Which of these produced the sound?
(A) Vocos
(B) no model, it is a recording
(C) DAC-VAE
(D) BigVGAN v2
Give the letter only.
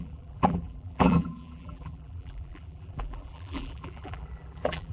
D